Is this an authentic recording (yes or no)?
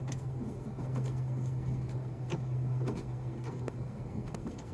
no